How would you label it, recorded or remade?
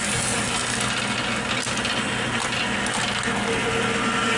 recorded